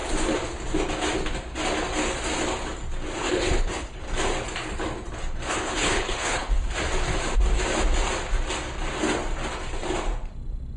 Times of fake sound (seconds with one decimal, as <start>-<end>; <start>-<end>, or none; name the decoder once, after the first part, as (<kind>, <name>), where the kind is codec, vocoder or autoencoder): 3.2-4.0 (codec, HILCodec); 5.5-6.6